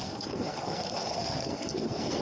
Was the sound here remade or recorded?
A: remade